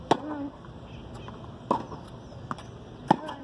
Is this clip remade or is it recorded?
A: recorded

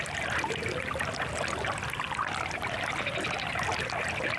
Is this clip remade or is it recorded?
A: recorded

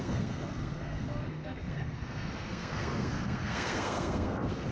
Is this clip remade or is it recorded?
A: remade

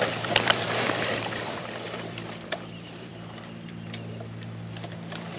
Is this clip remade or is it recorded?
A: remade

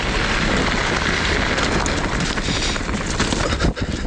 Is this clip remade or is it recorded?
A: recorded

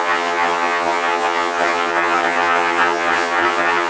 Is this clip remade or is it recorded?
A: remade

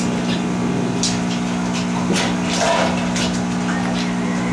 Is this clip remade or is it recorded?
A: recorded